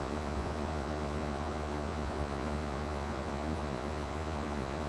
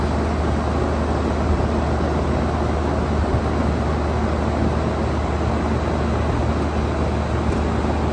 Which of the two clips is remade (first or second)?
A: first